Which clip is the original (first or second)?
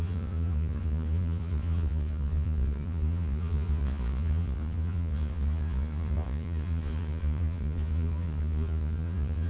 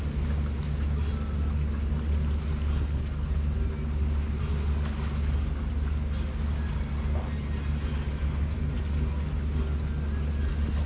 second